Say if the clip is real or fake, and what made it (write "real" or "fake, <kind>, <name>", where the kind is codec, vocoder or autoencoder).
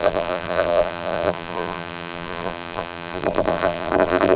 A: fake, vocoder, BigVGAN v2